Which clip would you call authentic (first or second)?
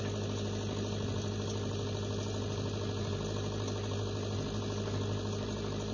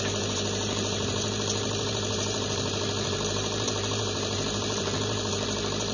first